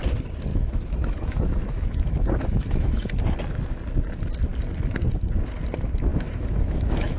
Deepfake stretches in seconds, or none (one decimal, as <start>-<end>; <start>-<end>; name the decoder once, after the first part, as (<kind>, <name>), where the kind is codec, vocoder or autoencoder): 0.5-2.9 (autoencoder, DAC-VAE); 6.1-7.2